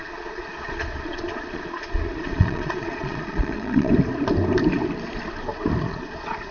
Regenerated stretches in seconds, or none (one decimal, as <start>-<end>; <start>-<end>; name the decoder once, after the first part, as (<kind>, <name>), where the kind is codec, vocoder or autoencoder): 0.0-3.9 (vocoder, Vocos); 5.9-6.5